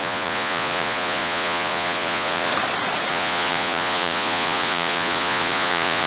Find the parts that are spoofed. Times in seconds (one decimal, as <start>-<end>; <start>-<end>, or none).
0.0-2.5; 3.1-6.1